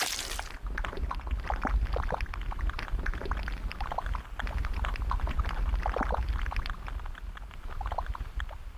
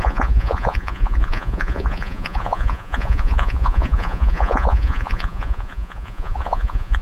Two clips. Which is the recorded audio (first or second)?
first